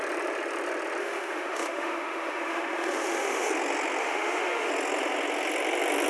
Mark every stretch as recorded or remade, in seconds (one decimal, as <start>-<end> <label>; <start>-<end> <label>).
0.0-1.0 recorded; 1.0-3.5 remade; 3.5-4.0 recorded; 4.0-4.7 remade; 4.7-6.1 recorded

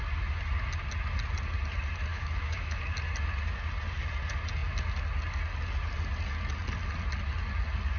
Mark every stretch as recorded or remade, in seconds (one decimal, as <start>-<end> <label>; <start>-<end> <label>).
0.0-2.1 recorded; 2.1-2.8 remade; 2.8-8.0 recorded

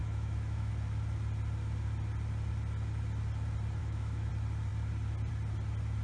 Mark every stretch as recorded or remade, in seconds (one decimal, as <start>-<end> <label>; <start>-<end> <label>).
0.0-0.7 remade; 0.7-3.8 recorded; 3.8-4.3 remade; 4.3-6.0 recorded